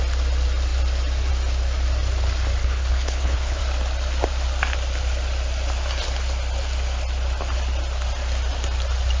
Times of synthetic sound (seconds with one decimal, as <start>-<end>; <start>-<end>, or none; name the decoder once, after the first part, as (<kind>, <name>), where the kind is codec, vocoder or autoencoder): 2.6-3.6 (codec, HILCodec)